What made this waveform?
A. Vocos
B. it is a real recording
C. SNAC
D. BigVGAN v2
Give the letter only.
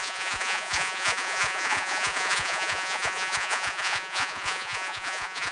A